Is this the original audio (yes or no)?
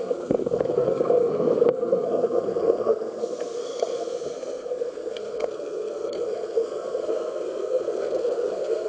no